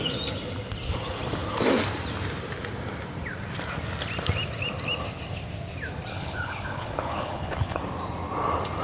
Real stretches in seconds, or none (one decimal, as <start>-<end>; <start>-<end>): 0.0-6.1; 7.8-8.8